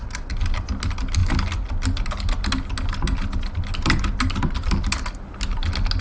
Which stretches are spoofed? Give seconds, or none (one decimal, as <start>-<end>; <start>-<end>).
none